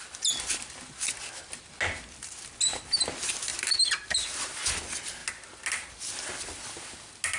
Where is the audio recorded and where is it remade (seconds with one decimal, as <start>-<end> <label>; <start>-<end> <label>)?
0.0-7.4 recorded